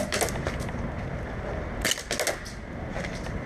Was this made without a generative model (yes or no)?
yes